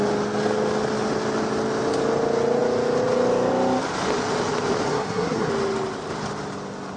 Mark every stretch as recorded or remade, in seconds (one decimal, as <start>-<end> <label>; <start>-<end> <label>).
0.0-4.9 recorded; 4.9-5.5 remade; 5.5-7.0 recorded